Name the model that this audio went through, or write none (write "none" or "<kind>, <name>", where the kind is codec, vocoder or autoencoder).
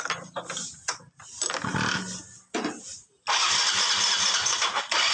none